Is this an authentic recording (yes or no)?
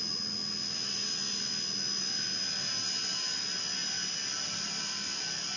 yes